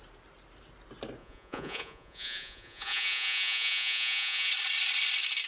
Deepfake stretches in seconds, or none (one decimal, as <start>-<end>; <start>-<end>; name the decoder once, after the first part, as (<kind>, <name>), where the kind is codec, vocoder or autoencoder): 1.2-4.5 (vocoder, Vocos)